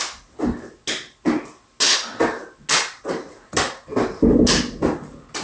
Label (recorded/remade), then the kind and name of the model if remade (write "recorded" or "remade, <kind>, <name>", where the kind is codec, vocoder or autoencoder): recorded